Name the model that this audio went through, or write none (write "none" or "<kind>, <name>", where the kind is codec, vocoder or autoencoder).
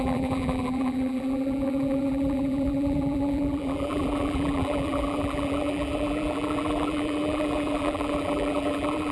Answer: vocoder, BigVGAN v2